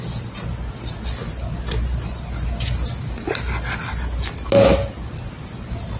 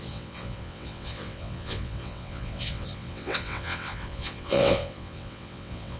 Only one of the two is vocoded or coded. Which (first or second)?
second